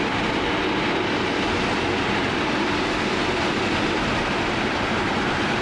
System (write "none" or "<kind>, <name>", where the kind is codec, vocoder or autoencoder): vocoder, BigVGAN v2